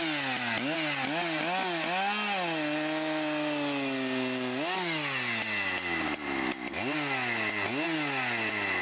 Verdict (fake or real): real